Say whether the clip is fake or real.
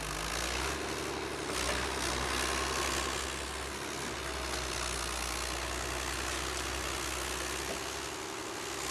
real